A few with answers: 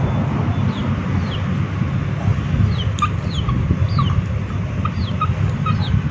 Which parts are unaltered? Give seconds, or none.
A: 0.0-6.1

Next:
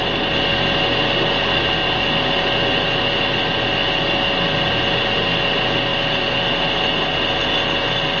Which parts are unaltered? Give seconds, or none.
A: 0.0-8.2

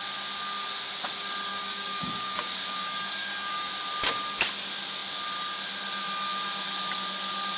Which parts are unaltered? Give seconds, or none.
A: 0.0-1.5; 3.7-7.6